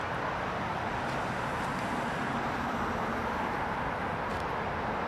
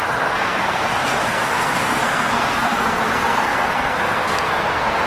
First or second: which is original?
first